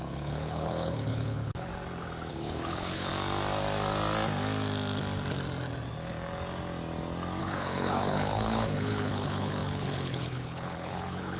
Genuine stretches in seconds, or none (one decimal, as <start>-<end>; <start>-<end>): 1.7-2.3; 3.1-7.4